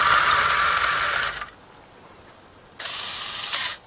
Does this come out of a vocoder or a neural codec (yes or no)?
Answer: no